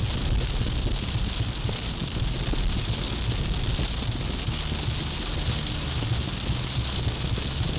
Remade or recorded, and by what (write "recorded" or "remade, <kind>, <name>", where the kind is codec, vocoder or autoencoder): recorded